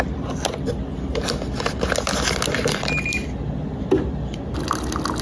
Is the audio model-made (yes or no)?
no